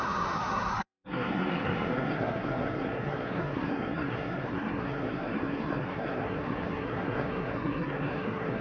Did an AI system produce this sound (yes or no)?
yes